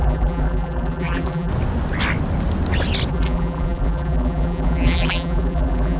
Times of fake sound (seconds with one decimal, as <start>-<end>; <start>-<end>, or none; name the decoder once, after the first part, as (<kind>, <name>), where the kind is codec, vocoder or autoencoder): 0.0-1.5 (vocoder, BigVGAN v2); 3.1-6.0